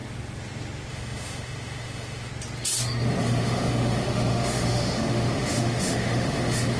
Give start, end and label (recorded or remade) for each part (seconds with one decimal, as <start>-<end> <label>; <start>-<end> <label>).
0.0-0.9 recorded; 0.9-2.3 remade; 2.3-3.2 recorded; 3.2-6.8 remade